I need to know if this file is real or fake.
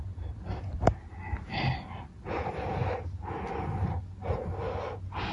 real